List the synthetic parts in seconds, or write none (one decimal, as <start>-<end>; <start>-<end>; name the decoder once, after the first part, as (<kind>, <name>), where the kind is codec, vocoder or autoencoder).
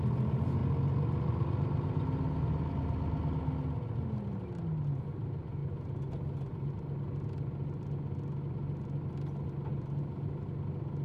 none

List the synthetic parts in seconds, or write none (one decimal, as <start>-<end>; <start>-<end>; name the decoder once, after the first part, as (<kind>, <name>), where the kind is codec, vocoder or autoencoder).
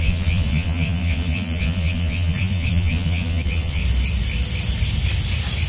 0.0-3.8 (vocoder, Vocos)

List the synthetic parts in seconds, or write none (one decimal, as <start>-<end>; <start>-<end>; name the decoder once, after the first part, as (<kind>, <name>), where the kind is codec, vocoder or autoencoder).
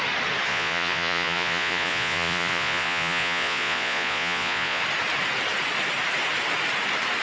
0.5-4.8 (vocoder, Vocos)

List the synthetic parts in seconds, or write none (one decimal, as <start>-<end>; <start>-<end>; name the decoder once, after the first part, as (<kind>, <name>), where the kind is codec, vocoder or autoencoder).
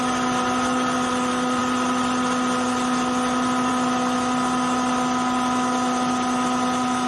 none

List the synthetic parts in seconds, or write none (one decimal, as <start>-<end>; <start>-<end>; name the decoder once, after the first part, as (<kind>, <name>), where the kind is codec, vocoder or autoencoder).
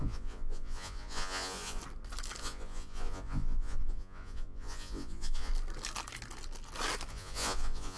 0.0-1.8 (vocoder, Vocos); 2.4-5.5; 7.1-8.0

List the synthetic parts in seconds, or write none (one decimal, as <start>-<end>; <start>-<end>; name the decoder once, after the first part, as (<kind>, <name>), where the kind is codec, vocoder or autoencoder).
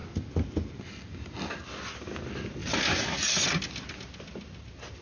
none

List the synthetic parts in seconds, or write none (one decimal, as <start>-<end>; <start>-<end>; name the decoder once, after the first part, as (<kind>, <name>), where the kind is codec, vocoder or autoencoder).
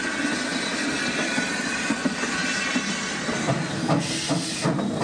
none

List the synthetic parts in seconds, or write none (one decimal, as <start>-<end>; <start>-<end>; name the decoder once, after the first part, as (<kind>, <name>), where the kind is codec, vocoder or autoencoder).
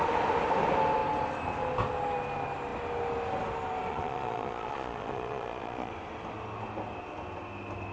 3.9-5.9 (vocoder, Vocos)